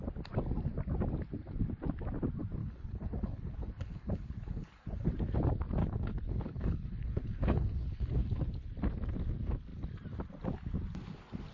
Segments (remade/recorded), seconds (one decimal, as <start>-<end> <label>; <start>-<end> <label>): 0.0-2.6 recorded; 2.6-5.1 remade; 5.1-5.8 recorded; 5.8-8.5 remade; 8.5-11.5 recorded